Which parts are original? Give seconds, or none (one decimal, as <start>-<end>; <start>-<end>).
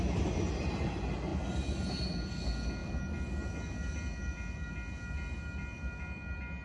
0.0-6.6